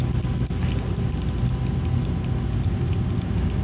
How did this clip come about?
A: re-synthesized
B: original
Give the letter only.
B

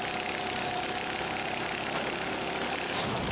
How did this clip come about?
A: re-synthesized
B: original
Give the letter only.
B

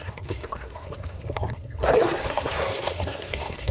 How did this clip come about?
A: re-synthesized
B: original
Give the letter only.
A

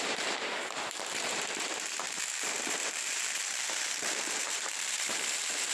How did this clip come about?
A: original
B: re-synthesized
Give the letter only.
B